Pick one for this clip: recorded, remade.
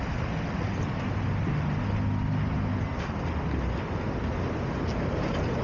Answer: recorded